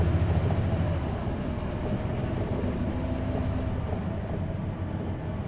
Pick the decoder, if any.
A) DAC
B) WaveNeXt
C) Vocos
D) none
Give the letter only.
D